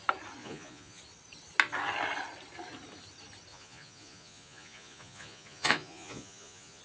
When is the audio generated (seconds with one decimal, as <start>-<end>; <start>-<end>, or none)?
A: 0.4-1.0; 3.5-6.8